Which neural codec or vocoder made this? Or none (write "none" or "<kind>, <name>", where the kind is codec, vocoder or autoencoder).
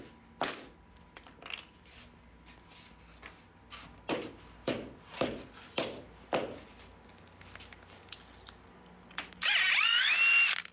none